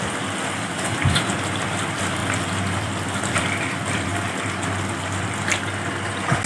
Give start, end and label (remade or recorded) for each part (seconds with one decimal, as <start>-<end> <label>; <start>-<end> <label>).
0.0-4.1 remade; 4.1-6.5 recorded